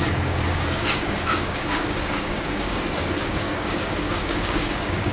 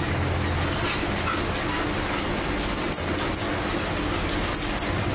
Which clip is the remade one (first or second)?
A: first